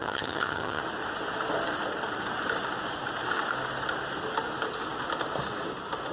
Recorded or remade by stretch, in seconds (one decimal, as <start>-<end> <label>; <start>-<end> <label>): 0.0-0.8 remade; 0.8-6.1 recorded

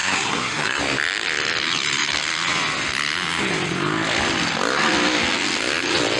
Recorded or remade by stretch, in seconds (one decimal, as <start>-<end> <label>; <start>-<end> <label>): 0.0-0.8 remade; 0.8-6.2 recorded